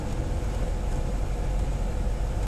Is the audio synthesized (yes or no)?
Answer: yes